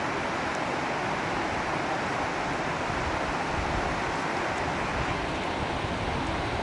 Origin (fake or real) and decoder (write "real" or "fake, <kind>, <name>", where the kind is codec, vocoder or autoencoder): real